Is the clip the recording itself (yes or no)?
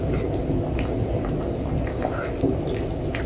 yes